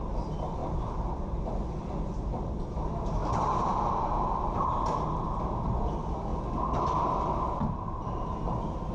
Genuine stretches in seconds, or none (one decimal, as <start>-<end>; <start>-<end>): 0.0-0.6; 1.4-8.9